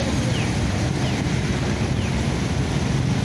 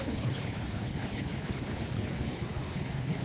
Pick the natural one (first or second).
first